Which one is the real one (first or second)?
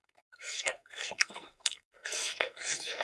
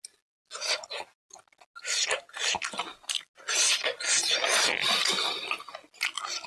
second